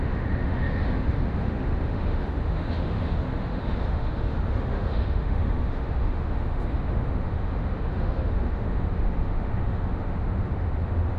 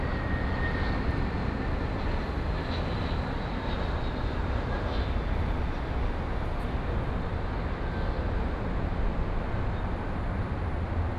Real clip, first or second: second